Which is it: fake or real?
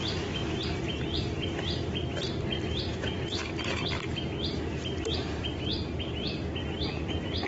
real